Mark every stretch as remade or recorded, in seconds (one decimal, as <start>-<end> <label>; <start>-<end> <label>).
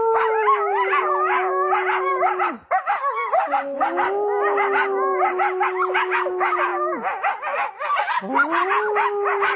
0.0-9.6 recorded